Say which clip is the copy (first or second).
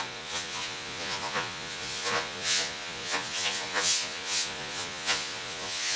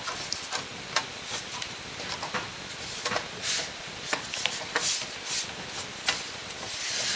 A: first